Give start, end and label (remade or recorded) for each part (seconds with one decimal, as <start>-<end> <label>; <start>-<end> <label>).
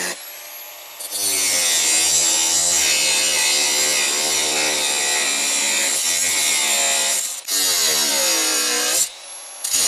0.0-9.9 recorded